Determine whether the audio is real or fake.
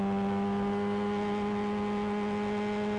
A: real